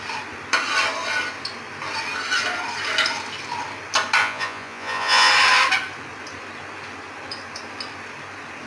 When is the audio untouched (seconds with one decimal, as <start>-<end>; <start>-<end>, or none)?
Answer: 0.0-4.2; 5.3-8.7